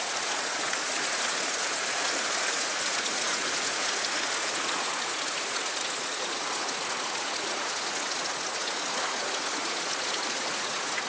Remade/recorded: remade